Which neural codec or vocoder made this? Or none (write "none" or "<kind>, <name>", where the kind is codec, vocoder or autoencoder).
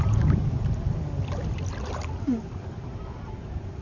none